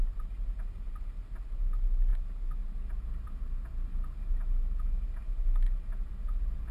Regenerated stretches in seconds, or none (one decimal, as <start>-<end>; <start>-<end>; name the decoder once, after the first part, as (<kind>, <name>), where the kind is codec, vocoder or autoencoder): none